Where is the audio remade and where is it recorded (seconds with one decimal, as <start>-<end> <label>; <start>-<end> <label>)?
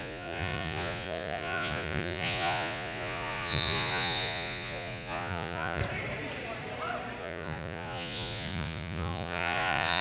0.0-5.8 remade; 5.8-7.2 recorded; 7.2-10.0 remade